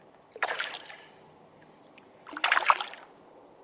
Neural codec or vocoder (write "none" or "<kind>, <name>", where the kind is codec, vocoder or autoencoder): none